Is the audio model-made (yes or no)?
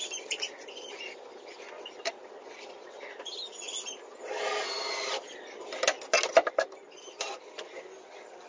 no